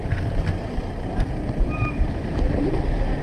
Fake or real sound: fake